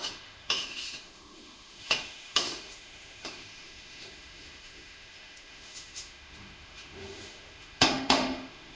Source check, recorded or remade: remade